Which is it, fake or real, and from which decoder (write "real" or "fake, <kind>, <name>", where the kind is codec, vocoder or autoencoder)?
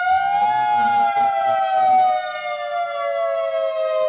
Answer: real